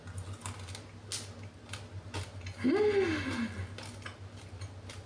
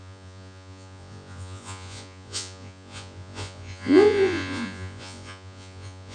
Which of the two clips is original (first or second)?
first